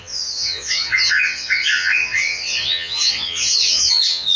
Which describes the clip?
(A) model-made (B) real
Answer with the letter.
A